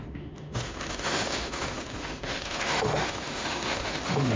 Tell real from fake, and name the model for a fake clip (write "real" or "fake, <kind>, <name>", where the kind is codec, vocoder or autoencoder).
fake, autoencoder, DAC-VAE